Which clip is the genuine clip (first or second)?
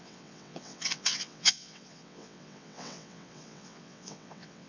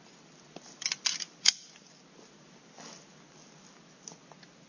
second